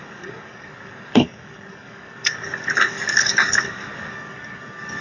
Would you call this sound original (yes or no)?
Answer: no